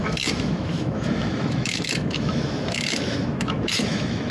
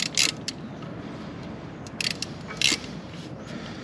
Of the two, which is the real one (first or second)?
second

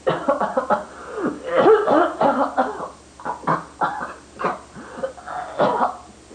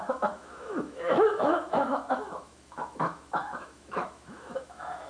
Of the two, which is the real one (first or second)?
first